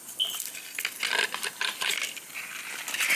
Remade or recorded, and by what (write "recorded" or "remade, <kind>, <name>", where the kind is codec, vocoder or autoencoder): recorded